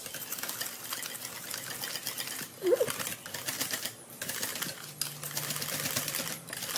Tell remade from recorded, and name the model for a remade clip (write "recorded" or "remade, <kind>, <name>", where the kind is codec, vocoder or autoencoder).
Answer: recorded